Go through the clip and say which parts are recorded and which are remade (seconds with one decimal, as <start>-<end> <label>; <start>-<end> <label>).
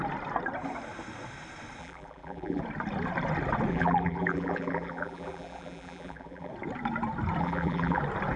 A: 0.0-1.8 recorded; 1.8-2.6 remade; 2.6-3.7 recorded; 3.7-6.5 remade; 6.5-7.4 recorded; 7.4-8.0 remade; 8.0-8.4 recorded